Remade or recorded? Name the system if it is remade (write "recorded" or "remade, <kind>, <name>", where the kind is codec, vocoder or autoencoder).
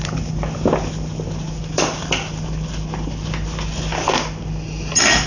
recorded